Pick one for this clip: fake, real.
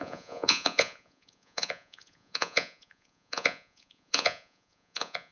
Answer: fake